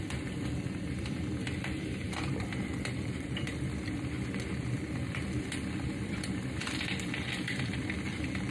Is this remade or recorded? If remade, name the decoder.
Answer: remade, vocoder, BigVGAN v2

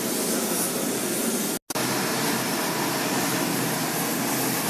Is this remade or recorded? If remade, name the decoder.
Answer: recorded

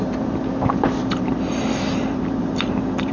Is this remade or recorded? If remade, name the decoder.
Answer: remade, vocoder, BigVGAN v2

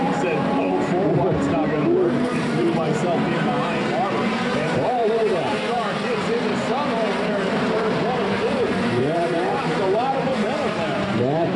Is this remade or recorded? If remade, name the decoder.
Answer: remade, vocoder, BigVGAN v2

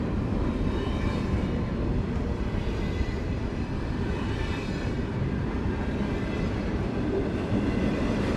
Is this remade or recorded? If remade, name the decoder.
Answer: remade, vocoder, BigVGAN v2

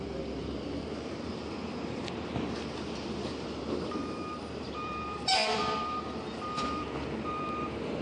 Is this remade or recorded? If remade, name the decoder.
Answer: remade, vocoder, BigVGAN v2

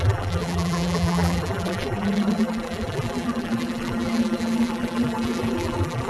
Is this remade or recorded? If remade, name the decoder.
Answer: remade, vocoder, BigVGAN v2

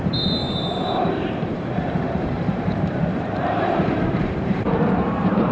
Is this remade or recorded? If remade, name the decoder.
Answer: remade, vocoder, BigVGAN v2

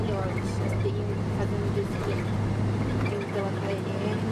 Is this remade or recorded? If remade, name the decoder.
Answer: recorded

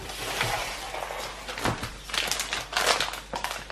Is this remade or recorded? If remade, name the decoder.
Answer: recorded